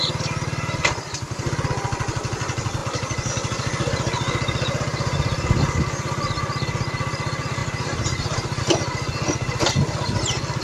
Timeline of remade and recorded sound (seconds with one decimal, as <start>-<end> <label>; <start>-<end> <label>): 0.0-7.6 recorded; 7.6-8.6 remade; 8.6-10.6 recorded